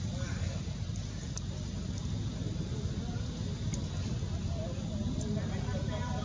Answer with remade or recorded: recorded